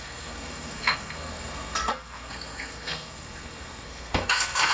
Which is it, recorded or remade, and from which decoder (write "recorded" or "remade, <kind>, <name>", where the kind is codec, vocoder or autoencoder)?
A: remade, codec, SNAC